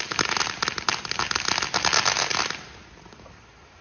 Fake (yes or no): no